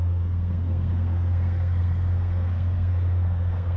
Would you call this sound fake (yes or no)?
yes